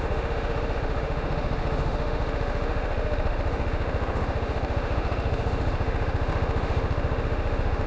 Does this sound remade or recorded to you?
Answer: remade